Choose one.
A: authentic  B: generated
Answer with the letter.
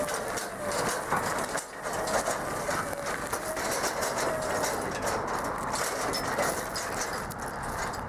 A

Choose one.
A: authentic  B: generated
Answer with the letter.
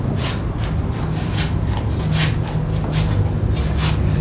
A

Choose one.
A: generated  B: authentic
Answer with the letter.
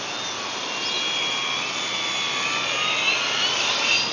B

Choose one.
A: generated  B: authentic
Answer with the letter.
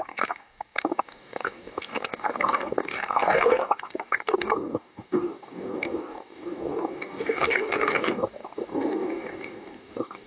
A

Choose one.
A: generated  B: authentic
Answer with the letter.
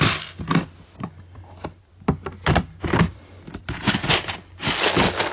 B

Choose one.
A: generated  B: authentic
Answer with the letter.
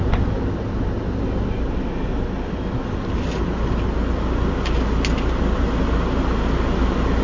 B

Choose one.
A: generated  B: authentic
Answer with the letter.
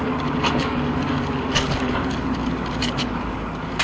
A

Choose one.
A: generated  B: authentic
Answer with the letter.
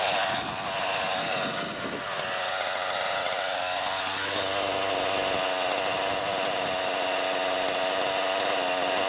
B